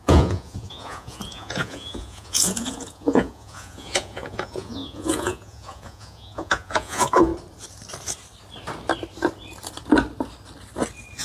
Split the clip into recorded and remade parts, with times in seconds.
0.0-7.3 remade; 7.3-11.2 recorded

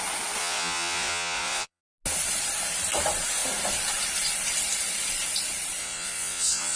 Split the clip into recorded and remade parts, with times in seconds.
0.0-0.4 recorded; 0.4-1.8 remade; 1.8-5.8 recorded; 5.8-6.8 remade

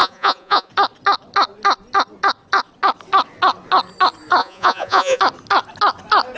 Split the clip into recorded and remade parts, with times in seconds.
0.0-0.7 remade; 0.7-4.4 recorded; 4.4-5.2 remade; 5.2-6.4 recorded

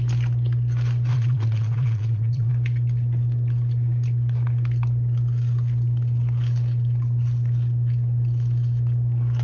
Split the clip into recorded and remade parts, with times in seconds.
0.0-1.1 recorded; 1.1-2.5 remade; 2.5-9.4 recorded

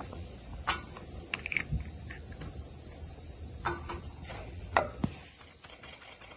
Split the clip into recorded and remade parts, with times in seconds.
0.0-0.5 remade; 0.5-4.3 recorded; 4.3-5.0 remade; 5.0-5.7 recorded; 5.7-6.4 remade